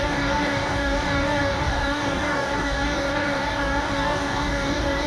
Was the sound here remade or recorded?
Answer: remade